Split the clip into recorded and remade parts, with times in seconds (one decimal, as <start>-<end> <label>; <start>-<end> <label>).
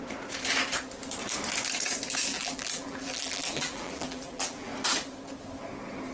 0.0-2.3 recorded; 2.3-4.7 remade; 4.7-6.1 recorded